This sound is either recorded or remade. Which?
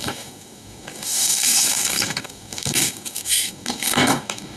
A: remade